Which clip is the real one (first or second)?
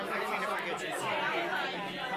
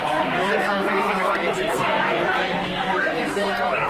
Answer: first